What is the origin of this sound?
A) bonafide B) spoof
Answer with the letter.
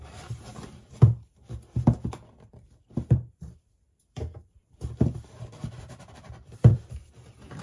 B